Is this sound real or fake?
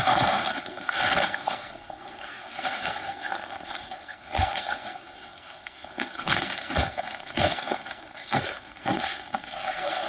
fake